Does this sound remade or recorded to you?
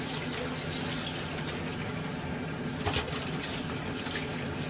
recorded